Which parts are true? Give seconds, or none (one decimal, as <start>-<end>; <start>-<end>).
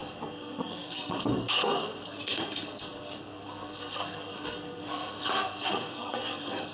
none